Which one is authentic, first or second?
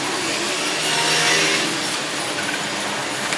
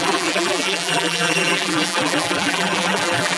first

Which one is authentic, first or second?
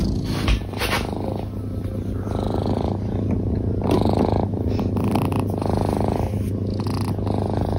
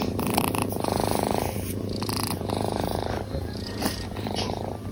first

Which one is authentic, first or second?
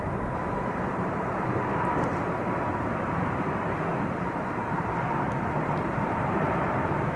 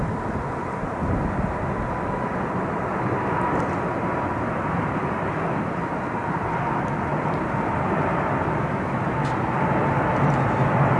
second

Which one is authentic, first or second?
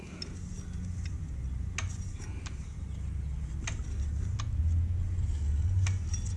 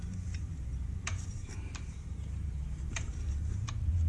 first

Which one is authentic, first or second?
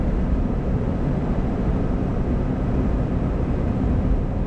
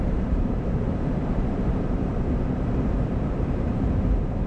first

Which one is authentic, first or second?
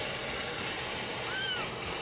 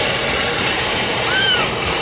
first